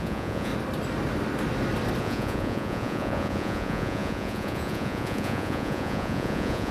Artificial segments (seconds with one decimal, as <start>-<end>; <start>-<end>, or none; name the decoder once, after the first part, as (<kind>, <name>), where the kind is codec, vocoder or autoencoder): 0.0-0.5 (vocoder, Vocos); 2.0-6.7

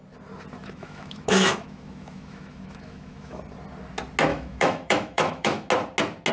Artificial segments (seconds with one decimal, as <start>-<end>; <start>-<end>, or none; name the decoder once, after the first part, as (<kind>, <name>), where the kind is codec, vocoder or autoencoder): 0.6-3.4 (autoencoder, DAC-VAE); 4.3-5.7

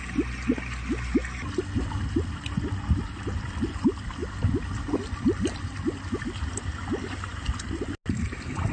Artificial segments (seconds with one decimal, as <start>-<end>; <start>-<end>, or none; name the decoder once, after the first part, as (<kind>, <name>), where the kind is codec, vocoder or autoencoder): none

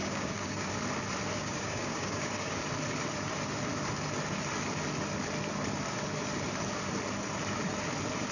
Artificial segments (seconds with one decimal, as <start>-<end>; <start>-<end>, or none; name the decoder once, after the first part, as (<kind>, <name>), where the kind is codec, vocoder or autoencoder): 0.0-0.7 (codec, DAC); 1.4-2.5

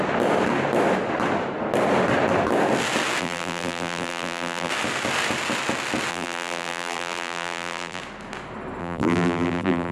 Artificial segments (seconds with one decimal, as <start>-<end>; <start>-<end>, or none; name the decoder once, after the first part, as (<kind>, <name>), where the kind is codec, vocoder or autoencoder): 3.2-4.7 (vocoder, BigVGAN v2); 6.1-8.0; 8.8-9.9